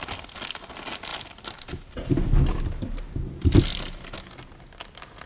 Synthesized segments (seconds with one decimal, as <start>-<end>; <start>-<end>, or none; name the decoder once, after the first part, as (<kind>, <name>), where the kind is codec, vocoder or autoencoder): none